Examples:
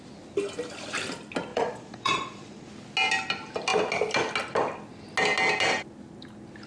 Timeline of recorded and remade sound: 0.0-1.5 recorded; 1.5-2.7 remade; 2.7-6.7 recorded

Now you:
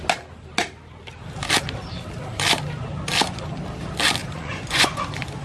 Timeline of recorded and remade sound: 0.0-4.2 recorded; 4.2-5.4 remade

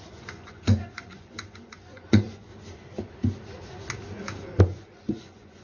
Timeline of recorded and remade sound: 0.0-2.5 remade; 2.5-4.6 recorded; 4.6-5.6 remade

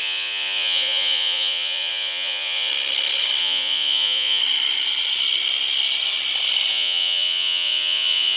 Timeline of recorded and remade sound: 0.0-2.7 remade; 2.7-3.4 recorded; 3.4-4.4 remade; 4.4-6.7 recorded; 6.7-8.4 remade

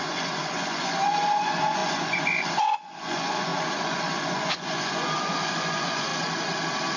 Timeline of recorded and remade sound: 0.0-6.1 remade; 6.1-7.0 recorded